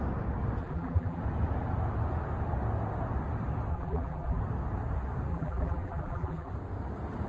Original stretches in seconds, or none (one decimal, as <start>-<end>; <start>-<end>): 0.0-0.6; 1.2-3.7; 4.4-5.3; 6.5-7.3